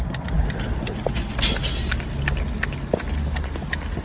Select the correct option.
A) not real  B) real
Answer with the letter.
B